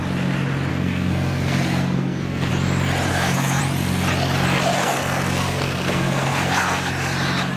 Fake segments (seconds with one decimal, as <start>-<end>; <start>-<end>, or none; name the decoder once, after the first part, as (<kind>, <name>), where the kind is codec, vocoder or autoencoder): 0.7-2.5 (codec, SNAC); 3.1-3.6; 4.8-6.9